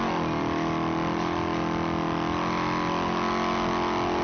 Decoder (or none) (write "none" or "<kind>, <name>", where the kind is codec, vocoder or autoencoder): none